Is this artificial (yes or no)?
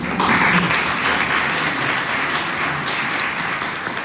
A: no